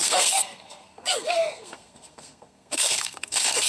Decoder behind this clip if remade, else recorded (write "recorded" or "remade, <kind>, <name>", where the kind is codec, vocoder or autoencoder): remade, codec, SNAC